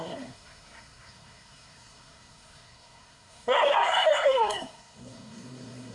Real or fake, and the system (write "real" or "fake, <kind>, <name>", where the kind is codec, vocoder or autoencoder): fake, codec, SNAC